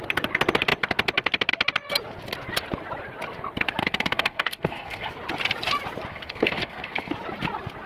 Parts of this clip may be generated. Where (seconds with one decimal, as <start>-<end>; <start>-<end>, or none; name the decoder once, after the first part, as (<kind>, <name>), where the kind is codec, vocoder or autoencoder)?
3.8-5.1 (codec, SNAC); 6.1-7.1